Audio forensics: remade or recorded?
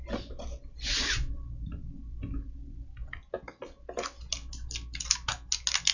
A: recorded